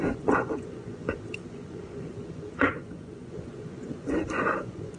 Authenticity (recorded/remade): remade